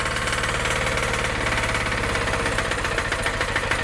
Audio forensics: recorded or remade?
recorded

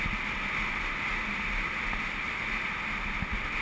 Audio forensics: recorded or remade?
recorded